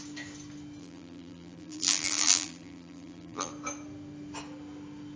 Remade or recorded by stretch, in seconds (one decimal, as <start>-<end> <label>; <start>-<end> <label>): 0.0-0.8 recorded; 0.8-3.5 remade; 3.5-5.2 recorded